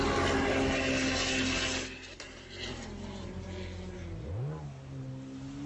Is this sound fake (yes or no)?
no